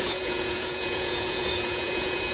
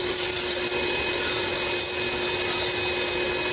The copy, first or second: first